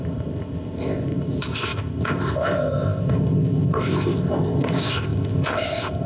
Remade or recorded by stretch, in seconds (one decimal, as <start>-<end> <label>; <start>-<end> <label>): 0.0-6.1 remade